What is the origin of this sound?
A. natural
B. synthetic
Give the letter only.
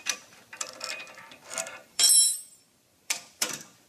B